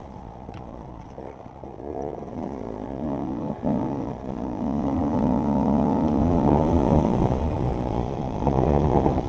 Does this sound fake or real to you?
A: fake